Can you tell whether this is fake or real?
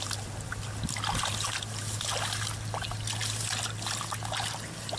real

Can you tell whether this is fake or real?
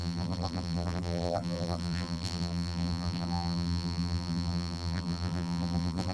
fake